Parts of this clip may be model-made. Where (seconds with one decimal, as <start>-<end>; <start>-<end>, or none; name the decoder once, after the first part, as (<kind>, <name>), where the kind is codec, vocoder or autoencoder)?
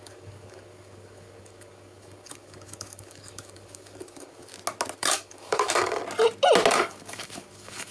0.0-4.5 (codec, DAC); 5.0-6.0; 6.7-7.9